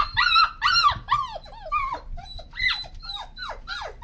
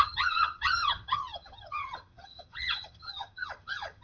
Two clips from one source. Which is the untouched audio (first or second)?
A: first